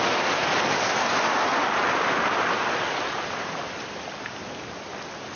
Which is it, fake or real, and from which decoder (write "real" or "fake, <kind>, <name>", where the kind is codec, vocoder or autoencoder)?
real